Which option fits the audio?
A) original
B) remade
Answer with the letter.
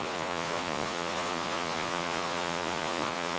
B